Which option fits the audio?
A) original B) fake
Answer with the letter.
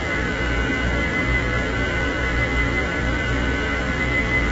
B